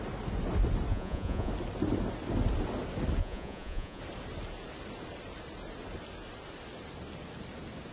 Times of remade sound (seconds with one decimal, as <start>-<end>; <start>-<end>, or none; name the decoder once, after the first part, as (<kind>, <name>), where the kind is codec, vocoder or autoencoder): 0.9-1.5 (vocoder, Vocos); 3.2-4.0